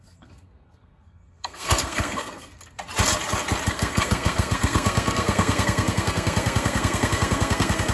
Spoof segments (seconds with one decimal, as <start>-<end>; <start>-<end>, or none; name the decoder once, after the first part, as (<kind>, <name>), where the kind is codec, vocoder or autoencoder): 0.0-2.5 (codec, SNAC); 3.7-7.9